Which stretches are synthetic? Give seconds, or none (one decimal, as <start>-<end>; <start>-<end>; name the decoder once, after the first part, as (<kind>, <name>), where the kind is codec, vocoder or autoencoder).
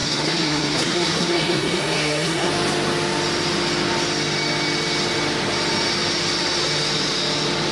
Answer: 0.0-2.5 (codec, SNAC)